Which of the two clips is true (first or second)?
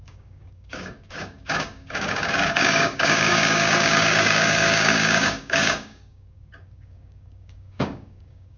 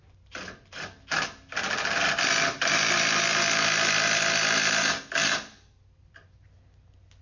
second